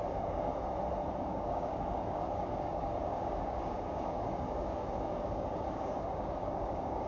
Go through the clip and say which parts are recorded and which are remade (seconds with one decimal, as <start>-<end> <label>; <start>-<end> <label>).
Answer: 0.0-0.5 remade; 0.5-1.2 recorded; 1.2-7.1 remade